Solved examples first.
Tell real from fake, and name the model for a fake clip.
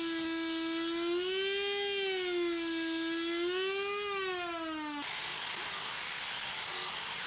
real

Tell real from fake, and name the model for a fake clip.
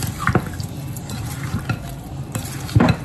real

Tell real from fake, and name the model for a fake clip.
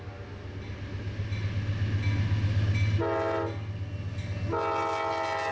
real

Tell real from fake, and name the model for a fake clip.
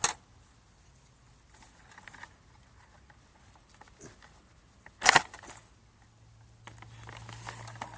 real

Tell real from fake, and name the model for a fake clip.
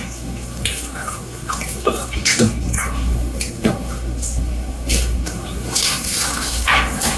fake, codec, SNAC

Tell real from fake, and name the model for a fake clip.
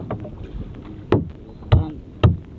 real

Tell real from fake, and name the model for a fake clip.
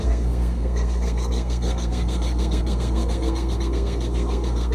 fake, codec, SNAC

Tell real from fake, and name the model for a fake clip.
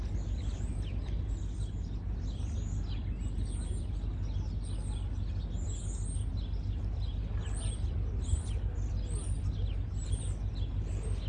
real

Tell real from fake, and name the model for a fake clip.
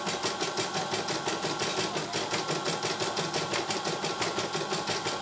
real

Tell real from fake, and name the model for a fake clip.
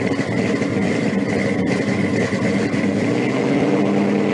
real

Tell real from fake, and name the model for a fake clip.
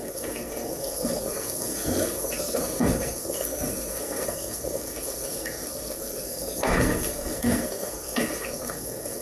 fake, codec, SNAC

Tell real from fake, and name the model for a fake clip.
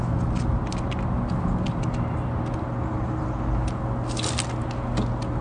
real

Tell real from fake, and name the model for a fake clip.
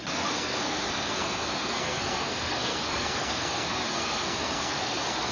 fake, codec, SNAC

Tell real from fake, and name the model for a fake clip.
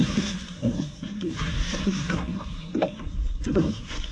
fake, codec, SNAC